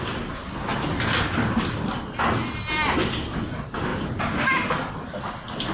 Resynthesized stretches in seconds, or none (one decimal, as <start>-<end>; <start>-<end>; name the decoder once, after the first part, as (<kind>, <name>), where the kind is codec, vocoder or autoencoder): none